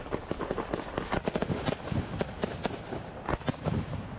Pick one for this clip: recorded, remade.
recorded